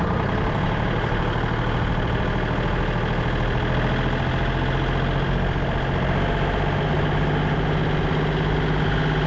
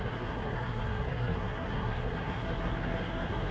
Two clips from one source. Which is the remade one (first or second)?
second